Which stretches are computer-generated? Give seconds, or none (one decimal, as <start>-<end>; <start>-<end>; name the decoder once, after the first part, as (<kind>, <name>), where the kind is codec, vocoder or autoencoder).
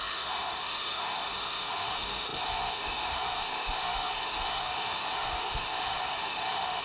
0.0-6.8 (autoencoder, DAC-VAE)